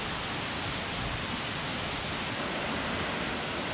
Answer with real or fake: real